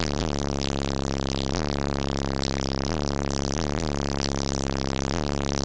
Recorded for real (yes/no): yes